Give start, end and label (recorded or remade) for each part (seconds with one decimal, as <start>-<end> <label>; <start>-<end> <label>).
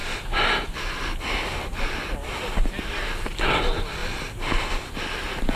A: 0.0-0.8 remade; 0.8-5.6 recorded